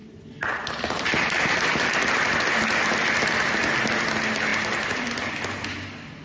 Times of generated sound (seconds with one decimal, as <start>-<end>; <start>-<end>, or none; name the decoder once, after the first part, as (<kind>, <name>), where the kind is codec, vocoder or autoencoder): none

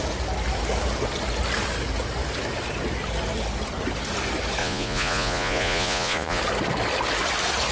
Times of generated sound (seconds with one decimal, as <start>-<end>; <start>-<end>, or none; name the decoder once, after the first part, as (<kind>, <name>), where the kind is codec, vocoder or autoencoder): 4.6-6.4 (vocoder, Vocos)

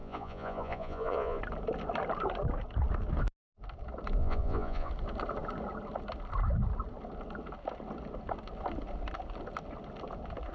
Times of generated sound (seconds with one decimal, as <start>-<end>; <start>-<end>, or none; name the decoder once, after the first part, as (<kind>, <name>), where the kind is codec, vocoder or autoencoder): 0.0-1.4 (vocoder, Vocos); 4.2-4.9

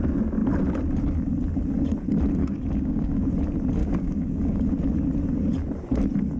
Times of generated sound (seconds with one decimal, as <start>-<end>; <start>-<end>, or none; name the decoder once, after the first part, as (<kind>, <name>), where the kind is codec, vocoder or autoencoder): 2.4-3.3 (codec, DAC); 3.8-4.7

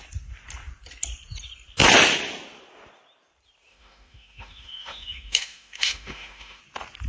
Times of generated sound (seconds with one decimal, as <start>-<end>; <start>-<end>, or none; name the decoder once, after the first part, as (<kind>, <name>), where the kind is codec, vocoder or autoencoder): 3.7-6.6 (autoencoder, DAC-VAE)

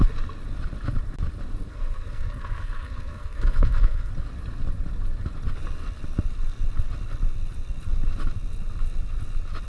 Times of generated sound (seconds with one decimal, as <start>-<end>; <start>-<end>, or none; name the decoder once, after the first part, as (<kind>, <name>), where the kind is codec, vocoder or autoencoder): 1.7-4.1 (codec, SNAC)

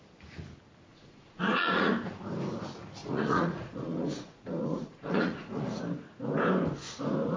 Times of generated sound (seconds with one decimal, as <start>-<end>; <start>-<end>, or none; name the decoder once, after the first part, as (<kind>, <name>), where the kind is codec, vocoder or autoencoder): 0.9-1.9 (vocoder, Vocos); 3.0-5.8